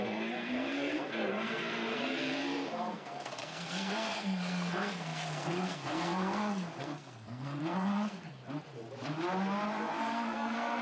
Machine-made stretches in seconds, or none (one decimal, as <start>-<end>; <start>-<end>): 0.0-8.4; 10.0-10.8